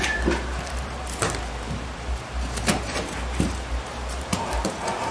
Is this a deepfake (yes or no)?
yes